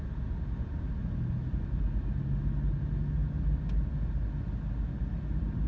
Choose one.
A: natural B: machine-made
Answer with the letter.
A